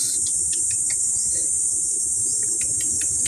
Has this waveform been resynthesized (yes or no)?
no